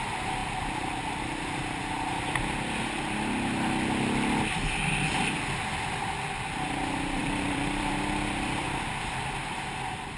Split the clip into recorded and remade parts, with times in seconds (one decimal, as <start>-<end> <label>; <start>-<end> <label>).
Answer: 0.0-7.2 recorded; 7.2-7.9 remade; 7.9-10.2 recorded